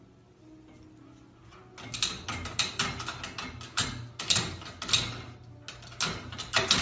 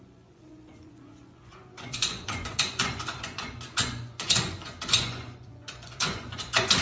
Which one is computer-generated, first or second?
second